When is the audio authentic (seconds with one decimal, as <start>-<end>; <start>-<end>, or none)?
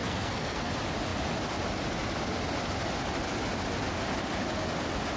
0.7-5.2